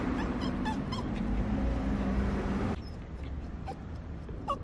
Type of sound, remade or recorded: remade